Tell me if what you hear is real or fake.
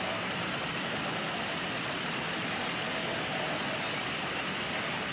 real